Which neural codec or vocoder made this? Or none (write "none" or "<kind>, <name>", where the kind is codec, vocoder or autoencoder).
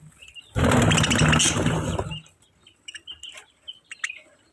none